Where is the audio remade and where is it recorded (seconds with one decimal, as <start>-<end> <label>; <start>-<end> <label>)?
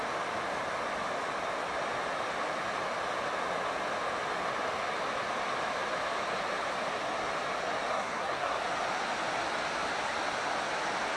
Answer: 0.0-7.9 recorded; 7.9-8.6 remade; 8.6-11.2 recorded